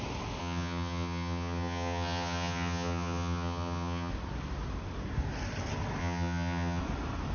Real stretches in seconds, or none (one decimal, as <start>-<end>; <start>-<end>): 0.0-0.4; 4.1-6.0; 6.8-7.3